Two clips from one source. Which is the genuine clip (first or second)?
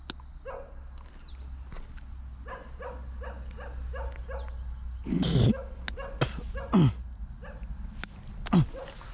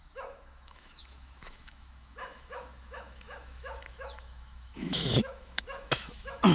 first